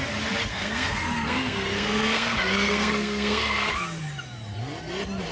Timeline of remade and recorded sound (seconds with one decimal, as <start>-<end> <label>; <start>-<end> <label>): 0.0-0.5 recorded; 0.5-3.7 remade; 3.7-5.3 recorded